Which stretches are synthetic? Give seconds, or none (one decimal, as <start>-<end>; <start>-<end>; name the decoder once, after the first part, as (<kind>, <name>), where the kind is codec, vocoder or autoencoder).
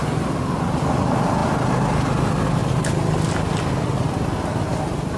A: none